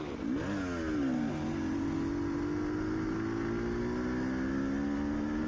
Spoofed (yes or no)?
no